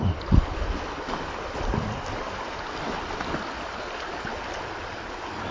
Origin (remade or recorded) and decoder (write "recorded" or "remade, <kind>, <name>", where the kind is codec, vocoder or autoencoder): recorded